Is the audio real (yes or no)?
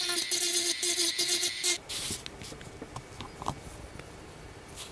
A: yes